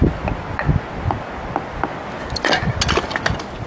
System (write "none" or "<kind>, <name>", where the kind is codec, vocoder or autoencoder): none